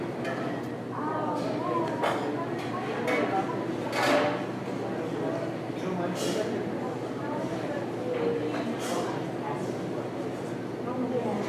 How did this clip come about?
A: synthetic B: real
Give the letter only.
B